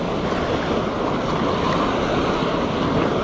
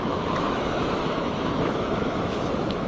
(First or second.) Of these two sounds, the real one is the first